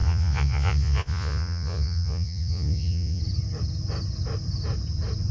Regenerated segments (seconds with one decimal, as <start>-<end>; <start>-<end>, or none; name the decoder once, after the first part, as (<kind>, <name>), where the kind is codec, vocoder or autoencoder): 0.0-3.2 (vocoder, Vocos)